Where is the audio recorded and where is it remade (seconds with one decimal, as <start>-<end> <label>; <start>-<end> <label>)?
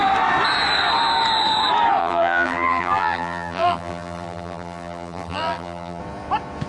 0.0-2.0 recorded; 2.0-6.0 remade; 6.0-6.7 recorded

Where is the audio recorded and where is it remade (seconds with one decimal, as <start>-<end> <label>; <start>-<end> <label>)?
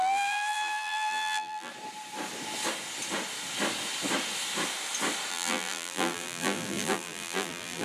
0.0-1.7 remade; 1.7-5.3 recorded; 5.3-7.8 remade